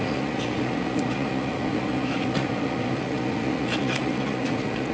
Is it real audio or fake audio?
fake